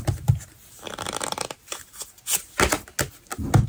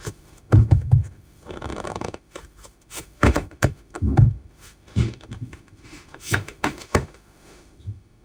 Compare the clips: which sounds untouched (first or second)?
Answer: first